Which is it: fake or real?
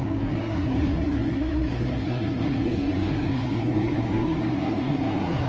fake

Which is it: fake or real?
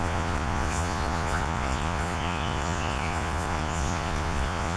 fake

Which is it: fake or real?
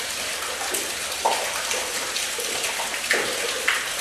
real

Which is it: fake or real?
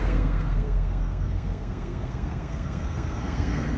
fake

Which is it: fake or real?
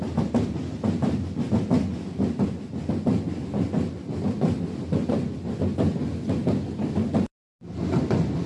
real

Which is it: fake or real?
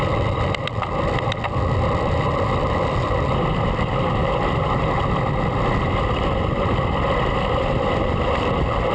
real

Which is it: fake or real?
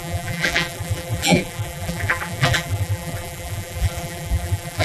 fake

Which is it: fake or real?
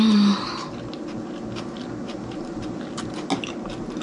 real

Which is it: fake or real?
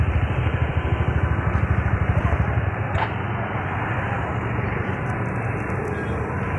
fake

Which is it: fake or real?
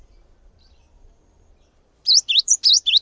fake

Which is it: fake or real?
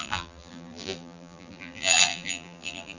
fake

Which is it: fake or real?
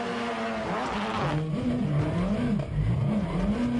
real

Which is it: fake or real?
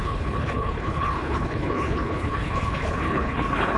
fake